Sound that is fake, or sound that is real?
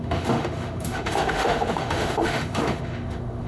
fake